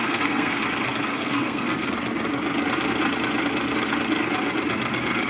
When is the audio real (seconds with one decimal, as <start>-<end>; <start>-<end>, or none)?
0.6-1.1; 1.9-5.3